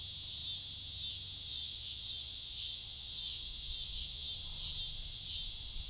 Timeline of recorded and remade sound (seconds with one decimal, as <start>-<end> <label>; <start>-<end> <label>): 0.0-1.5 recorded; 1.5-4.3 remade; 4.3-5.9 recorded